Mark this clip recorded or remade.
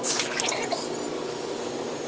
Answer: recorded